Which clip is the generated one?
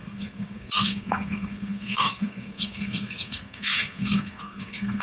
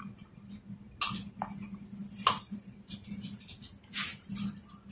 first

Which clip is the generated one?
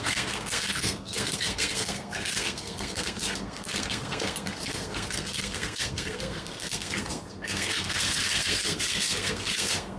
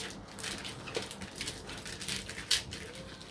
first